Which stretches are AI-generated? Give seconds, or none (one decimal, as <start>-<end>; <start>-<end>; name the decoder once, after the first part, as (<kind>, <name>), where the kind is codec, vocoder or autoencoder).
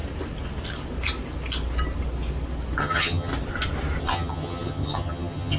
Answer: 2.8-3.3 (vocoder, HiFi-GAN); 4.0-5.6